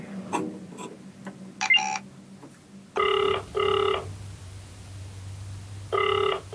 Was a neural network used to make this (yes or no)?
no